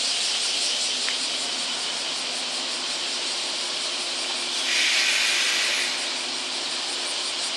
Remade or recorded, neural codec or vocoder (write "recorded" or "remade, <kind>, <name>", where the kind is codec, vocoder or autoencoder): recorded